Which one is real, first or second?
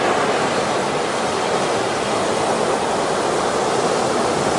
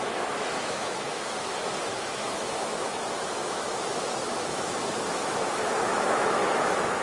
first